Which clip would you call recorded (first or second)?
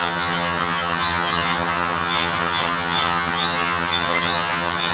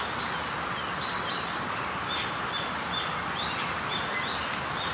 second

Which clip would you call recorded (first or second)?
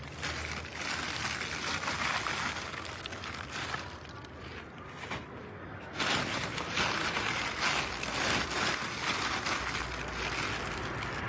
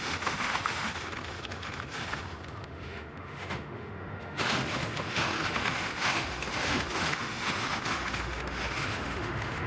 first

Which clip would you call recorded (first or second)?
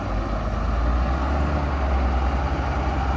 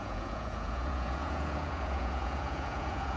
first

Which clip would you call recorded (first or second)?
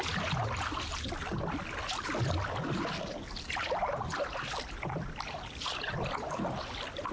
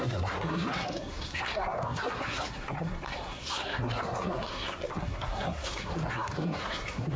first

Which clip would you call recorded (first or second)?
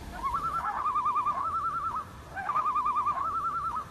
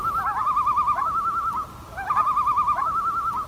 second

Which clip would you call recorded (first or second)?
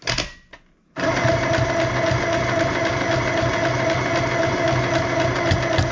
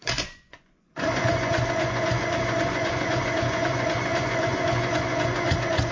first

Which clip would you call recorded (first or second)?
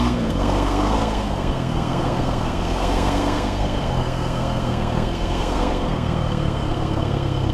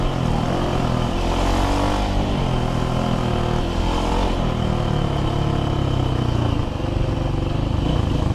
second